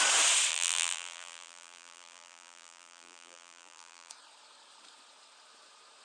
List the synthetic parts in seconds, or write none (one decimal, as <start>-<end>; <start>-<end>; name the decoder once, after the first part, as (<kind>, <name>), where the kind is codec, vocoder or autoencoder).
0.5-4.1 (vocoder, BigVGAN v2)